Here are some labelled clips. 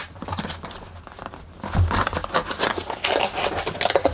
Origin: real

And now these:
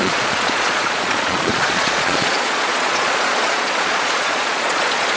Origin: fake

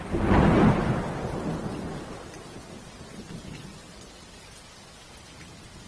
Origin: real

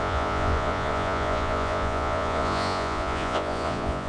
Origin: fake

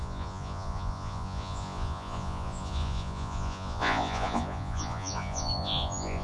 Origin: fake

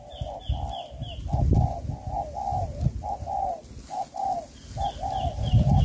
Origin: real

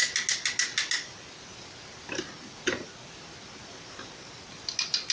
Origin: real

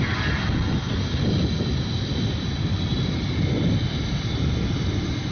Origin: real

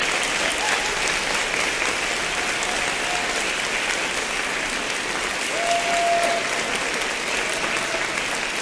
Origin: real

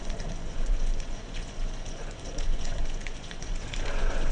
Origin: fake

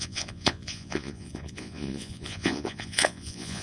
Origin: fake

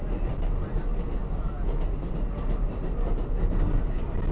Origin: real